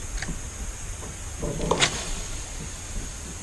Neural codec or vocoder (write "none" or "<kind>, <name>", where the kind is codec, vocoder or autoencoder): vocoder, BigVGAN v2